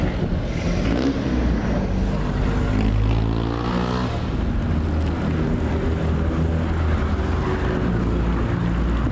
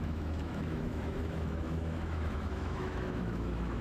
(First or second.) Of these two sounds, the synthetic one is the second